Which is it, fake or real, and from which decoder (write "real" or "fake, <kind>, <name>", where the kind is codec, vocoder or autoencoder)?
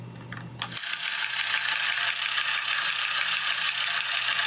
real